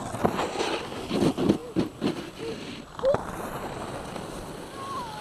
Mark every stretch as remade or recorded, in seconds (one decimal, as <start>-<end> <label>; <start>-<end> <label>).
0.0-5.2 recorded